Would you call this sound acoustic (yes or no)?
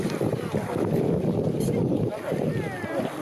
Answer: yes